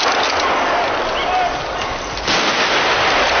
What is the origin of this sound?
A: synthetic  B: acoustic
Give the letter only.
B